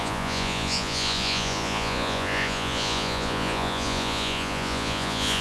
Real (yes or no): no